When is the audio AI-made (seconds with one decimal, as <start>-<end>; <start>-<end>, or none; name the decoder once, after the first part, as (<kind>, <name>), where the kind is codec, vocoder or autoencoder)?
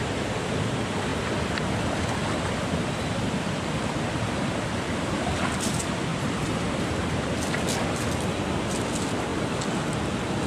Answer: 6.1-7.3 (vocoder, BigVGAN v2)